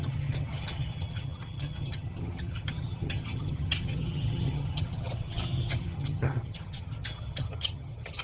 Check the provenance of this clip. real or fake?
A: fake